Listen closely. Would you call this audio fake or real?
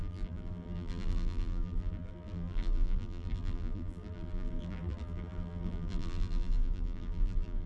fake